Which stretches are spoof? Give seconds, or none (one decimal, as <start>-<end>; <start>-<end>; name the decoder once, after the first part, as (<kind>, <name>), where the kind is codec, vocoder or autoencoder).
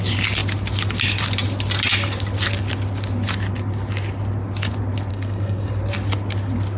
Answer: 5.1-5.7 (codec, SNAC)